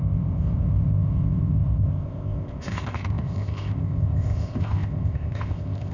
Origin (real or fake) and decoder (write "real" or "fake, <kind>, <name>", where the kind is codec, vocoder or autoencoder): fake, codec, ZipCodec